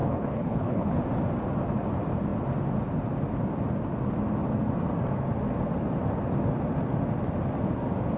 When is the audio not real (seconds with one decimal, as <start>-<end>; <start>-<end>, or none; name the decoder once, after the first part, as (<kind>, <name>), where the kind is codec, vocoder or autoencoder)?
0.0-1.0 (codec, HILCodec)